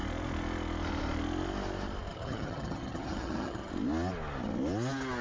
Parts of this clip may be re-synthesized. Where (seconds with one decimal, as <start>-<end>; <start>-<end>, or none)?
2.1-3.7